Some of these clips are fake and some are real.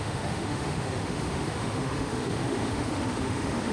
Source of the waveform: fake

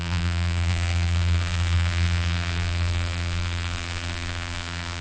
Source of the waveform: fake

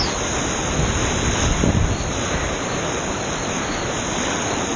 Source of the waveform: real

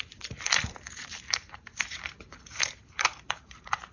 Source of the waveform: fake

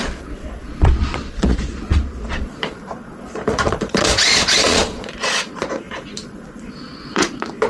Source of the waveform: fake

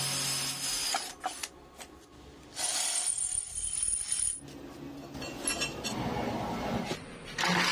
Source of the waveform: real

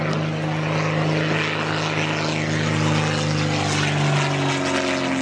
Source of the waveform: real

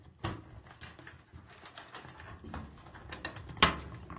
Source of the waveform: real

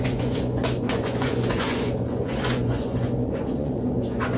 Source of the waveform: fake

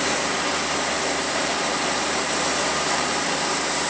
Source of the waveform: fake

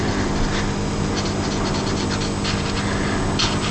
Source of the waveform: real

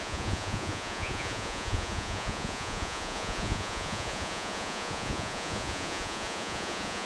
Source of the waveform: fake